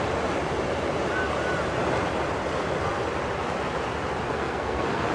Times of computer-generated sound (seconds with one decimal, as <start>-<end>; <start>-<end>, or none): 4.3-5.1